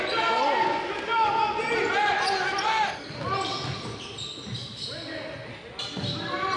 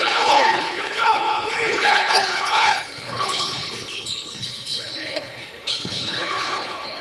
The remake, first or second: second